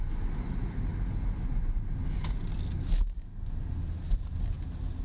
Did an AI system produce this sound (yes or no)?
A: no